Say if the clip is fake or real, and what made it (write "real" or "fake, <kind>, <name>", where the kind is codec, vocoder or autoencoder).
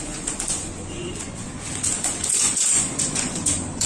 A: fake, vocoder, Vocos